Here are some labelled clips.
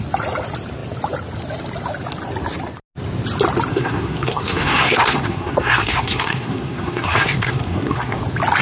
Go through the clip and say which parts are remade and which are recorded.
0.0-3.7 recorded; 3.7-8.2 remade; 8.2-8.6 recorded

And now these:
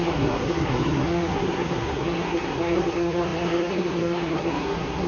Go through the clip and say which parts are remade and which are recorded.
0.0-5.1 remade

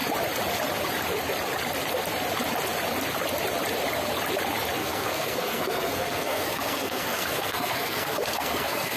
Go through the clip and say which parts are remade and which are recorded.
0.0-4.8 recorded; 4.8-9.0 remade

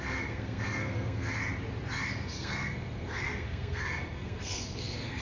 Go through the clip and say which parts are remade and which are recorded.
0.0-1.4 remade; 1.4-2.1 recorded; 2.1-5.2 remade

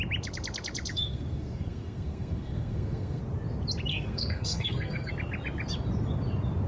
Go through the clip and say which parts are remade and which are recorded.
0.0-0.9 recorded; 0.9-3.2 remade; 3.2-3.9 recorded; 3.9-5.1 remade; 5.1-6.7 recorded

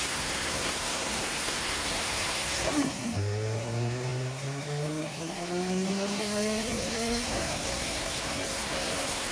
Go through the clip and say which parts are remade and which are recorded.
0.0-9.3 remade

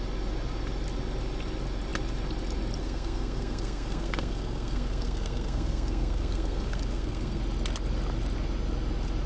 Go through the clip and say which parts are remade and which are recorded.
0.0-2.8 recorded; 2.8-7.4 remade; 7.4-9.3 recorded